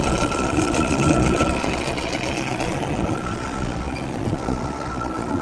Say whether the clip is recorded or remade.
remade